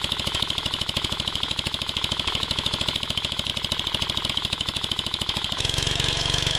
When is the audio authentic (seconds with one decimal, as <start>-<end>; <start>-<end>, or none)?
3.5-4.3